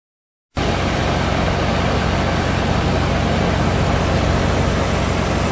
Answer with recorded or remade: recorded